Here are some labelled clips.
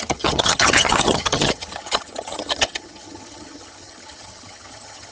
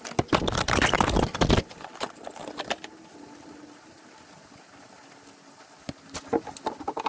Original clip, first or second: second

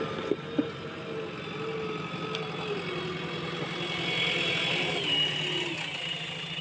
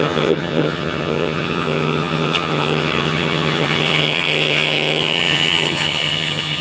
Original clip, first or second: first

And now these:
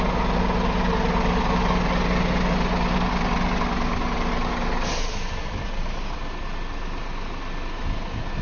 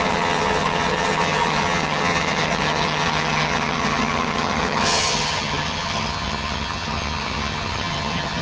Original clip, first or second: first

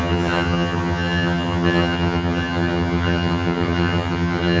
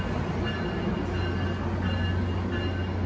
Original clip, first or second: second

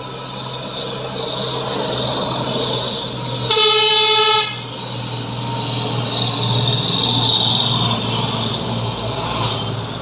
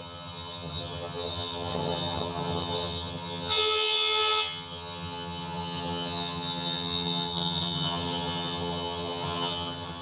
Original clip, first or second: first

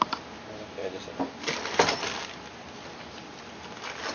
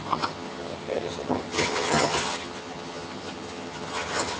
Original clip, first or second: first